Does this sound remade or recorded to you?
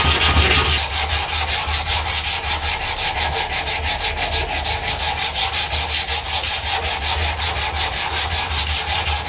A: recorded